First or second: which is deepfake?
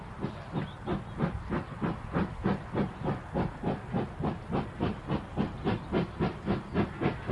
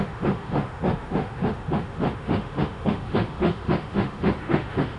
second